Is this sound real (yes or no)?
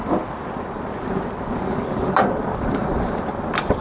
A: no